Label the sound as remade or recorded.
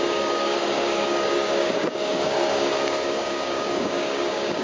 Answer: remade